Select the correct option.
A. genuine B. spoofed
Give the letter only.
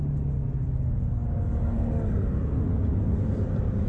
A